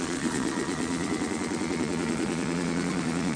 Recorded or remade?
remade